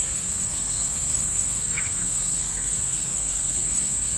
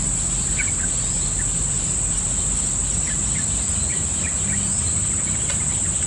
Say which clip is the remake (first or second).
first